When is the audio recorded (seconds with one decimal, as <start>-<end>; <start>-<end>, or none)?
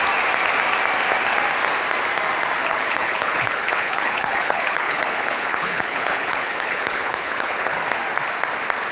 0.0-2.6; 7.8-8.9